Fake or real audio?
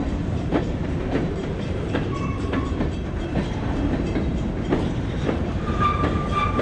fake